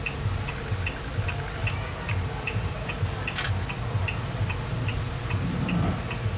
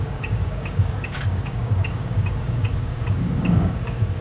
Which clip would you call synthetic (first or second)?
second